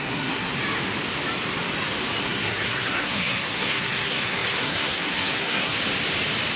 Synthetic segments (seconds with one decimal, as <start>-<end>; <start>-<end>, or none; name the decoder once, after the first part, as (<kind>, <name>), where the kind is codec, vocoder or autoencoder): 0.0-0.5 (codec, SNAC); 2.2-5.7